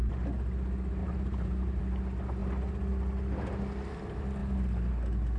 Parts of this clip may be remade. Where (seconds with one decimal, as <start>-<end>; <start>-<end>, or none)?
1.0-1.8